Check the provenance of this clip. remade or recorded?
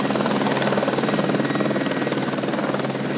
recorded